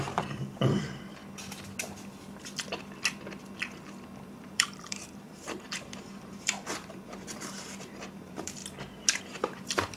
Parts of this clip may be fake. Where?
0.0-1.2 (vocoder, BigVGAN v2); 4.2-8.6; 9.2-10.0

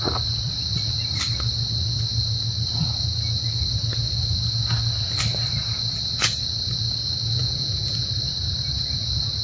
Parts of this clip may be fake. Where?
7.4-8.1 (vocoder, Vocos)

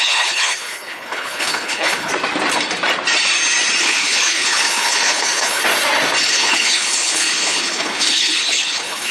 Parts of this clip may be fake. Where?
0.0-2.1 (codec, HILCodec); 3.8-5.6; 6.2-9.1

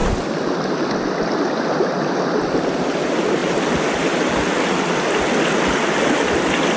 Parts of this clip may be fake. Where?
none

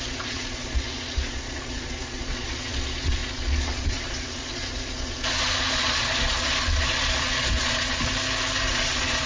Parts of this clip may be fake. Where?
0.0-8.1 (vocoder, Vocos); 8.7-9.3

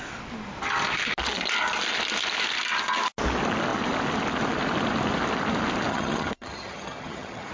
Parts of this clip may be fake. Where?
5.9-7.5 (vocoder, HiFi-GAN)

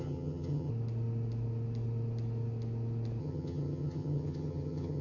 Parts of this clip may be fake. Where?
0.0-0.7 (vocoder, HiFi-GAN); 3.2-5.0